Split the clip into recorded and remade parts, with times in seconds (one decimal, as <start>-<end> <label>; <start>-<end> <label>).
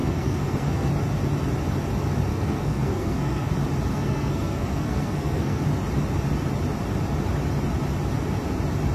0.0-0.9 remade; 0.9-2.3 recorded; 2.3-3.5 remade; 3.5-3.9 recorded; 3.9-5.6 remade; 5.6-8.9 recorded